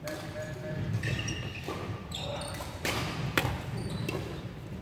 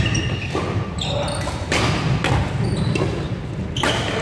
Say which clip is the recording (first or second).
second